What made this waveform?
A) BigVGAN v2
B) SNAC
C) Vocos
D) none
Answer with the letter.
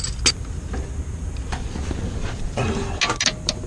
D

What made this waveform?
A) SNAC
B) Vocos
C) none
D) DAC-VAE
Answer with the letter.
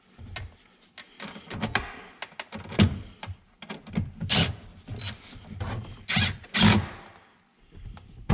C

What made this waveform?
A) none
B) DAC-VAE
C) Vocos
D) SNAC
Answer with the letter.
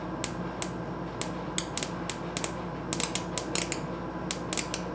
A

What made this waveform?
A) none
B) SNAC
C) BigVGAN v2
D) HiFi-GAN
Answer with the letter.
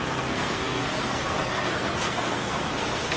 B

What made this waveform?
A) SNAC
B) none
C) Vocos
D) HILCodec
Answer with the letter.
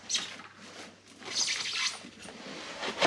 B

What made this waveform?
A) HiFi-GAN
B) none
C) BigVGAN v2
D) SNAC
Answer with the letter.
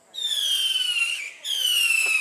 B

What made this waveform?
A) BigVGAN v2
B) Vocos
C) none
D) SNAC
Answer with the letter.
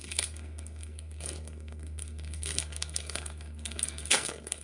D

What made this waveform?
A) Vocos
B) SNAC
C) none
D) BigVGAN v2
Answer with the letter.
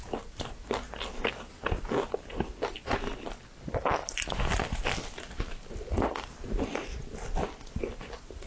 C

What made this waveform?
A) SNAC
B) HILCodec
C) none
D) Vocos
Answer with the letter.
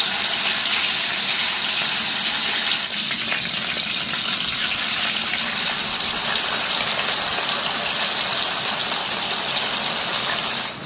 C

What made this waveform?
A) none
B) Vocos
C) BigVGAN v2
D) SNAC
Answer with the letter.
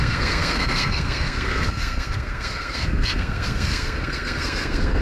D